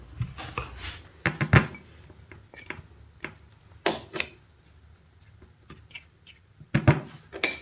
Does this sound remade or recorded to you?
recorded